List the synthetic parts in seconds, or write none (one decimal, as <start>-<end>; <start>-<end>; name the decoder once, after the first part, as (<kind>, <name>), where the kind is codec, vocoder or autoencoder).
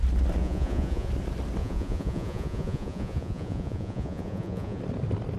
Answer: 0.4-1.1 (vocoder, Vocos); 1.6-4.8